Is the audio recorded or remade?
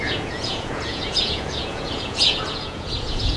remade